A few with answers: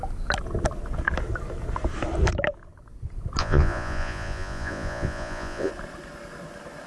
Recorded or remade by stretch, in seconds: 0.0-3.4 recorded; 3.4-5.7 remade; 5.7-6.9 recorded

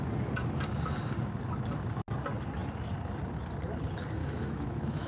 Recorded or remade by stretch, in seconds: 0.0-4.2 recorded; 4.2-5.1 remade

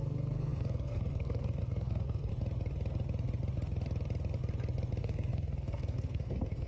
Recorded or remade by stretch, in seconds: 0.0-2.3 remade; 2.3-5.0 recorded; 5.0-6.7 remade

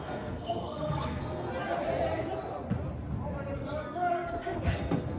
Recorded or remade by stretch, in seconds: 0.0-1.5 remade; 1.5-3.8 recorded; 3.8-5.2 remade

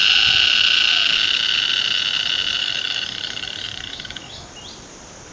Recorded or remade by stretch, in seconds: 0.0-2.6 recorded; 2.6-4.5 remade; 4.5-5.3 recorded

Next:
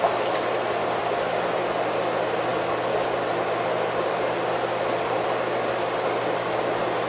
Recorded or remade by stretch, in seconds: 0.0-7.1 recorded

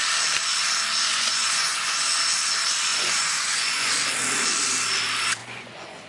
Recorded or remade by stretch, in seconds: 0.0-1.1 recorded; 1.1-2.1 remade; 2.1-2.9 recorded; 2.9-3.9 remade; 3.9-5.4 recorded; 5.4-6.1 remade

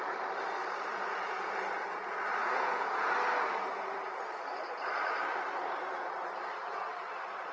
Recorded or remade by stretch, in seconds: 0.0-0.9 recorded; 0.9-1.5 remade; 1.5-2.4 recorded; 2.4-3.1 remade; 3.1-7.5 recorded